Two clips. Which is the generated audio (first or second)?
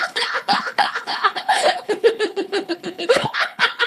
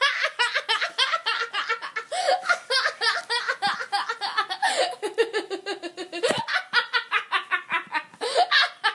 first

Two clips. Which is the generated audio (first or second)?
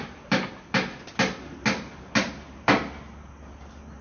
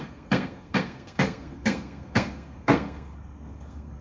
second